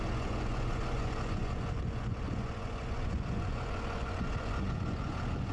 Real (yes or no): no